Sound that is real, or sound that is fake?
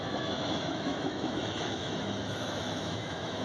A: fake